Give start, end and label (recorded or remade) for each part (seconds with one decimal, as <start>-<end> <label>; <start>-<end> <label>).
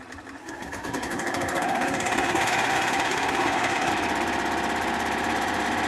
0.0-0.4 recorded; 0.4-3.9 remade; 3.9-5.9 recorded